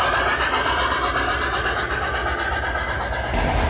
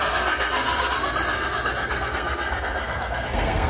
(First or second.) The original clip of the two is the first